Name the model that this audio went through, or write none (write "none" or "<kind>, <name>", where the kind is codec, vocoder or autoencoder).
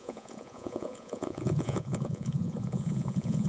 vocoder, Vocos